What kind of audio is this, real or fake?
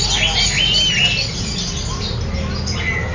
real